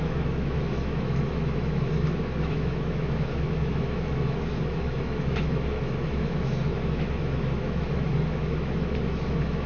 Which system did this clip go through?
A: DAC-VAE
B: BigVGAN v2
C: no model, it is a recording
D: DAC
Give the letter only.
A